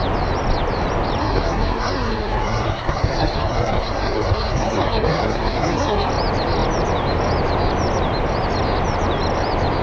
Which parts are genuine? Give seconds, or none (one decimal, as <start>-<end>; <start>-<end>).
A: 0.0-1.2; 6.1-9.8